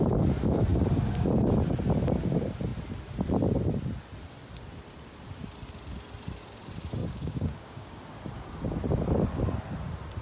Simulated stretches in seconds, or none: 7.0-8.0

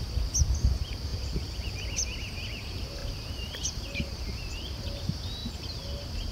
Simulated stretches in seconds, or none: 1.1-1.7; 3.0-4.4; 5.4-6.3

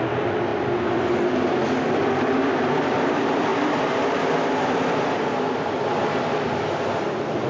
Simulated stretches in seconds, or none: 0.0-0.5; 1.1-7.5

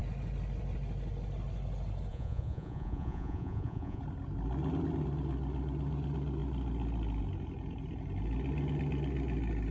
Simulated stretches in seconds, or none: 2.1-4.0

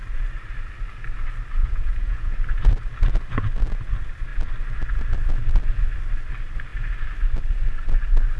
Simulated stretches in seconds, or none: 1.6-2.4

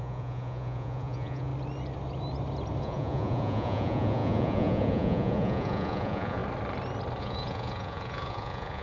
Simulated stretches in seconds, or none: 0.0-1.5; 2.8-6.4; 7.2-8.8

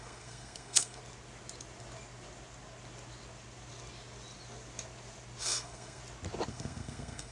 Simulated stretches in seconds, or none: 0.0-1.0; 5.4-6.0; 6.5-7.3

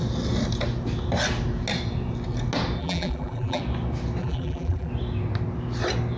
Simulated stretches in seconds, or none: 2.8-3.6; 4.2-4.9